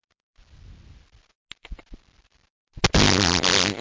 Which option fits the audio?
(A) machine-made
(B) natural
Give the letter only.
B